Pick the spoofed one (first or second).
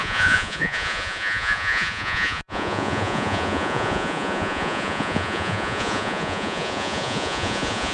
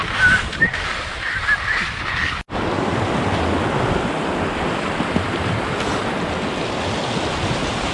first